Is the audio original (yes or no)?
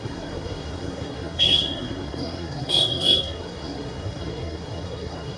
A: no